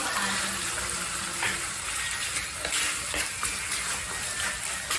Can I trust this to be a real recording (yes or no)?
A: yes